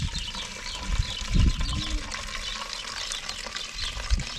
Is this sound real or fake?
real